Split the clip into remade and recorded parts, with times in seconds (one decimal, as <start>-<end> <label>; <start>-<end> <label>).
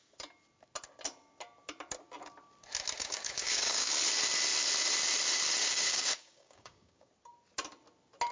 0.0-3.0 recorded; 3.0-3.9 remade; 3.9-5.6 recorded; 5.6-7.1 remade; 7.1-8.3 recorded